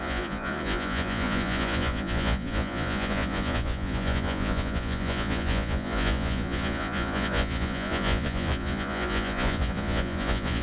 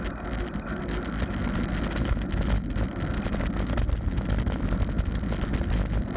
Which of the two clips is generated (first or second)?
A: first